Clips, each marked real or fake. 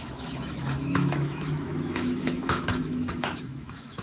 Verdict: fake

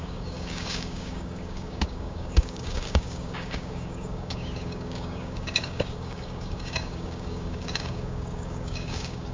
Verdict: fake